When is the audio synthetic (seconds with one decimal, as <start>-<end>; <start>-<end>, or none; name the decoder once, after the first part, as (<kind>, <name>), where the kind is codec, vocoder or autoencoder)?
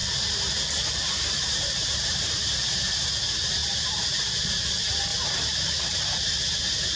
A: 0.0-3.2 (vocoder, BigVGAN v2); 3.6-4.6; 5.1-6.0